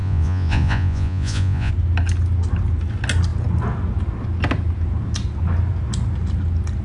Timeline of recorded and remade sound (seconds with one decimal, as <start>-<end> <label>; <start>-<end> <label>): 0.0-1.7 remade; 1.7-6.8 recorded